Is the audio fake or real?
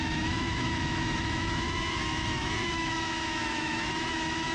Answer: fake